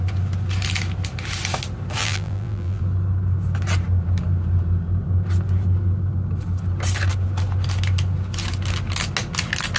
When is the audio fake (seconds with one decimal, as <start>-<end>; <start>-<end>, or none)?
2.0-2.8